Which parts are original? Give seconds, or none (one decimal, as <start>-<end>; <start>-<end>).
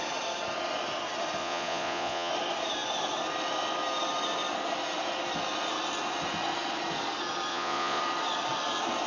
0.0-1.4; 2.3-7.5; 8.0-9.1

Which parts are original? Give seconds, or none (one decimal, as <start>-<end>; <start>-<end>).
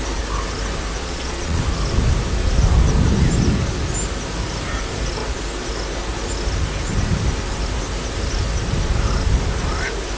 0.0-1.0; 1.6-10.2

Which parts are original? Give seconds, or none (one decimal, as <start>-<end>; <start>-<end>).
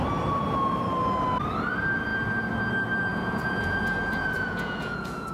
0.0-3.1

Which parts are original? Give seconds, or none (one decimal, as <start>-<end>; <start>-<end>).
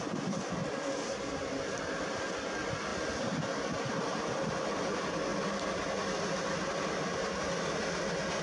0.0-8.4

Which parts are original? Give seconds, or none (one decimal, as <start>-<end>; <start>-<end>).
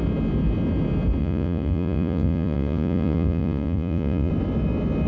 0.0-1.2; 4.3-5.1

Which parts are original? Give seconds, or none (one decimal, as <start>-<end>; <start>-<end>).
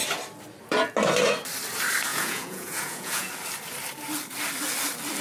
0.0-2.1; 3.3-5.2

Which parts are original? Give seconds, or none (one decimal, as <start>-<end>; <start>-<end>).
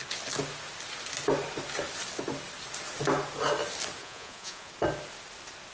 0.0-4.0; 4.7-5.7